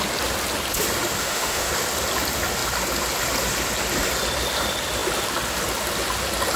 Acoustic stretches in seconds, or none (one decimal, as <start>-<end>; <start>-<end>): 0.0-1.2; 1.7-6.6